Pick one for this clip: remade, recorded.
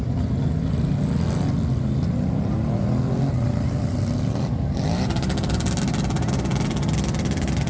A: recorded